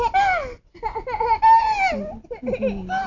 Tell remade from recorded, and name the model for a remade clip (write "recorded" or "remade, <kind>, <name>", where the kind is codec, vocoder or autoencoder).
recorded